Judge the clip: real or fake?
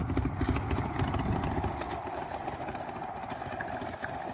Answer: real